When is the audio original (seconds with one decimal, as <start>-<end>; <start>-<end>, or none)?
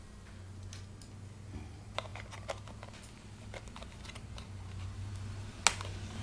0.0-6.2